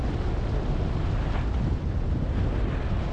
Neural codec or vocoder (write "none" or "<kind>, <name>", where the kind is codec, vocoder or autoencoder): none